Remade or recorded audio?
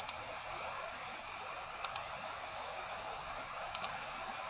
recorded